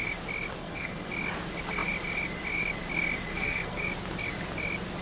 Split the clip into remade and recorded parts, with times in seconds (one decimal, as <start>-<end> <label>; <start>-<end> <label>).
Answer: 0.0-0.6 recorded; 0.6-1.1 remade; 1.1-3.3 recorded; 3.3-3.9 remade; 3.9-5.0 recorded